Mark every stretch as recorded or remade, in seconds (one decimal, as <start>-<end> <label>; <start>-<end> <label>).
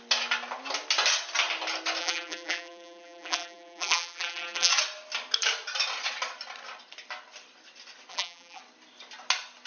0.0-2.0 recorded; 2.0-4.7 remade; 4.7-8.1 recorded; 8.1-8.6 remade; 8.6-9.7 recorded